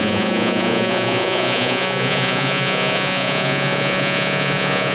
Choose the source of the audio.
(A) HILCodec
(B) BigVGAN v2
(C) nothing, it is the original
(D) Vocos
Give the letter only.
D